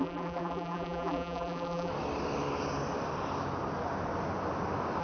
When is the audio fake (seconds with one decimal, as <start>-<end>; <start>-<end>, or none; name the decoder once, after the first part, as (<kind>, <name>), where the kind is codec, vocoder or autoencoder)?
0.0-1.9 (vocoder, BigVGAN v2)